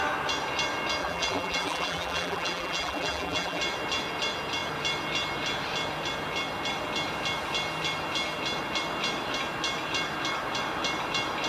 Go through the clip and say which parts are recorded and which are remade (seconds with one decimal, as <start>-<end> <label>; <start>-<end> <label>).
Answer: 0.0-1.0 recorded; 1.0-3.6 remade; 3.6-11.5 recorded